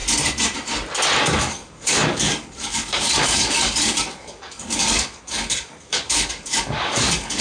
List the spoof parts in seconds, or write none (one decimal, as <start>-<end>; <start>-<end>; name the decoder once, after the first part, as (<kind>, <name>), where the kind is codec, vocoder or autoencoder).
1.2-7.4 (codec, DAC)